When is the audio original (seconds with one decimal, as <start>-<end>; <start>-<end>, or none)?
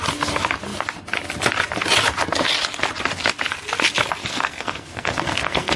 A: 0.0-4.2